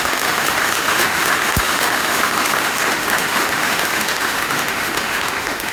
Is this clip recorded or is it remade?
remade